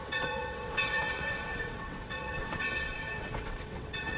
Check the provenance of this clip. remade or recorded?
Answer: remade